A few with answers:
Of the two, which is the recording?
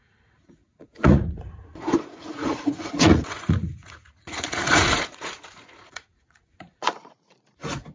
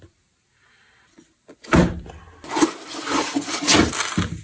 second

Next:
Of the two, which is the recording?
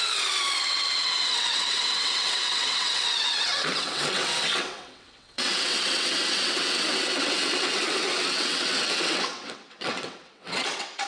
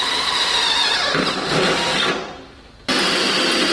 second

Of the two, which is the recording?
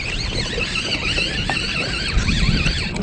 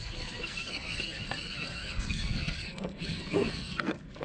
first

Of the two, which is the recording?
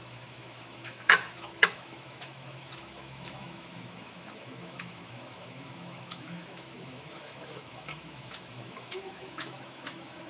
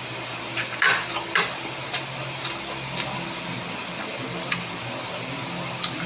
second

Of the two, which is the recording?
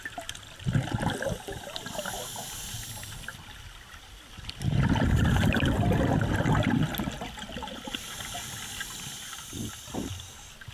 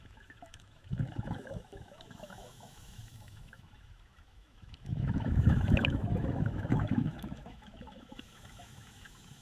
first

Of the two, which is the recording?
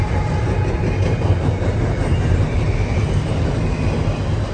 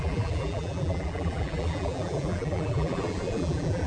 first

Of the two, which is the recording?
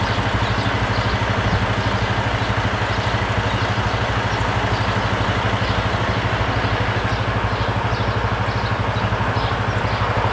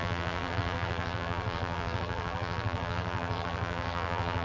first